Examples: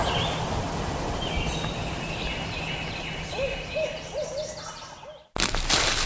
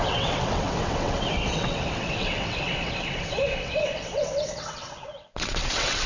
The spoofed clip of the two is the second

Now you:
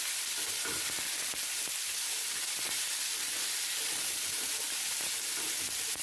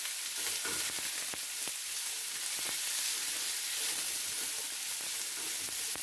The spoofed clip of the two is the first